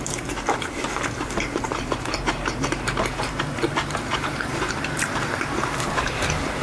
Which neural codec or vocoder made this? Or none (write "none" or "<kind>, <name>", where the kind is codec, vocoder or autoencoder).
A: vocoder, BigVGAN v2